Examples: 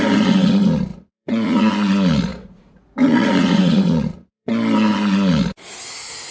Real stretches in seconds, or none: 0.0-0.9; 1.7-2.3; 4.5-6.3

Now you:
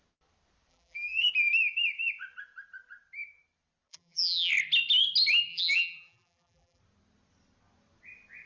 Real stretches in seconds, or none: 0.0-0.7; 1.3-3.9; 4.5-5.5; 6.8-8.5